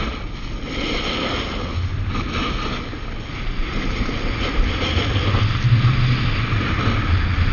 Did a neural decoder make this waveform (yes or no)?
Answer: no